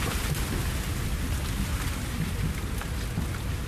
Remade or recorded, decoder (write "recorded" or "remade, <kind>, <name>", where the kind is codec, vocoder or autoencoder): recorded